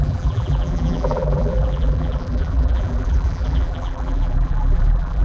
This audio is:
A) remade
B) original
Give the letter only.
A